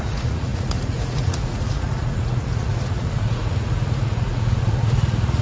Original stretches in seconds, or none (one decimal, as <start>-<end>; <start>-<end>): none